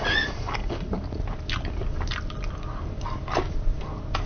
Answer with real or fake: real